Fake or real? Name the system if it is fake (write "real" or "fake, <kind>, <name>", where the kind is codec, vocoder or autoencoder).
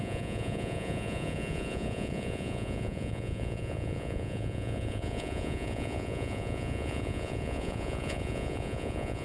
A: fake, vocoder, Vocos